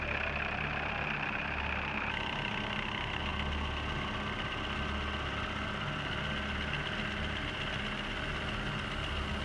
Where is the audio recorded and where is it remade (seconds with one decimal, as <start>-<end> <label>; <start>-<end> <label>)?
0.0-9.4 recorded